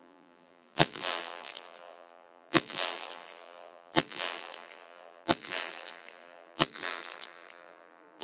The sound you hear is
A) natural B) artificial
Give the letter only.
B